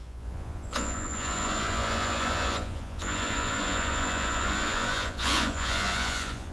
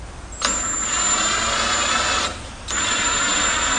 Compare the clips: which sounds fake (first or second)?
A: first